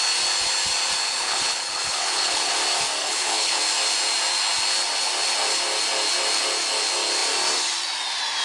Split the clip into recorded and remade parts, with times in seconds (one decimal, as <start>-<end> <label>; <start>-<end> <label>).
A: 0.0-1.0 recorded; 1.0-2.5 remade; 2.5-3.0 recorded; 3.0-3.6 remade; 3.6-8.4 recorded